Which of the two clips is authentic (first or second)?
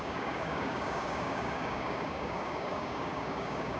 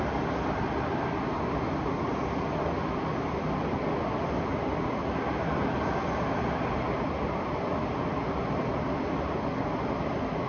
second